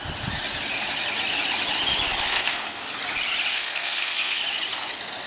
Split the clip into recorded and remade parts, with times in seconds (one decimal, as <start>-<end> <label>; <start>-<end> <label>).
0.0-2.3 recorded; 2.3-2.8 remade; 2.8-3.5 recorded; 3.5-4.4 remade; 4.4-5.3 recorded